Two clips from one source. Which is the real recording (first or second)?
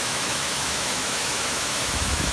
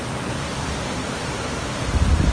second